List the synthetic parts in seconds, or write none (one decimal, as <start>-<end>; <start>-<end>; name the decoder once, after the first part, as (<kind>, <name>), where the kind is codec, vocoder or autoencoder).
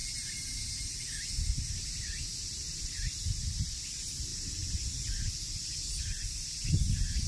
0.0-0.9 (vocoder, BigVGAN v2)